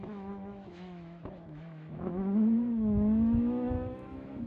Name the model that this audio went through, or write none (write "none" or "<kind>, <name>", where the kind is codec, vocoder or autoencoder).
autoencoder, DAC-VAE